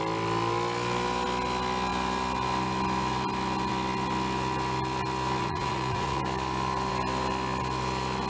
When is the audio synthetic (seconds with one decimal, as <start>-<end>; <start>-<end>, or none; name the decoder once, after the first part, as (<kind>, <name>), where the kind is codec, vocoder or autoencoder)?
5.4-6.2 (vocoder, Vocos)